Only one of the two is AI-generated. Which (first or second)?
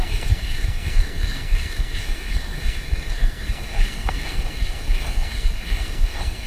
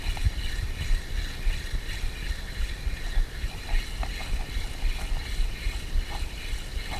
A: first